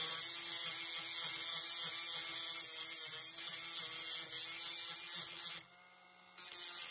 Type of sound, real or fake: real